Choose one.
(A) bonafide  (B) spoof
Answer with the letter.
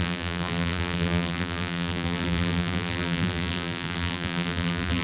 B